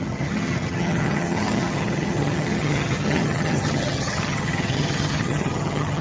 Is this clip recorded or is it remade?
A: remade